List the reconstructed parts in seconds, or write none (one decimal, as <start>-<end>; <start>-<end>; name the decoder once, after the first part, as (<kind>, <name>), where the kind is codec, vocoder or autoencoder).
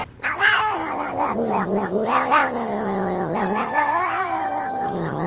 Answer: 0.0-2.4 (vocoder, BigVGAN v2); 3.4-5.3